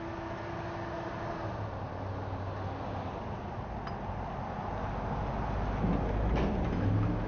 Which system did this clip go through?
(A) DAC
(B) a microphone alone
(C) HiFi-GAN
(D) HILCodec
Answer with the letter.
B